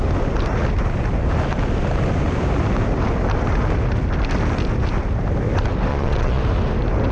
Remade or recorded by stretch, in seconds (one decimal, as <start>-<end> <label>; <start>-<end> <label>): 0.0-5.9 recorded; 5.9-6.4 remade; 6.4-7.1 recorded